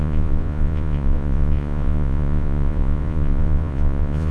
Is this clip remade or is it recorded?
remade